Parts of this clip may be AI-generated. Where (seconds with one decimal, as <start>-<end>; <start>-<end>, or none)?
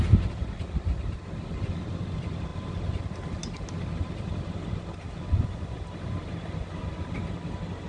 none